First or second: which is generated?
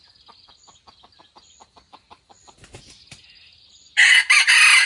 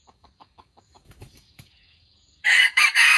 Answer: second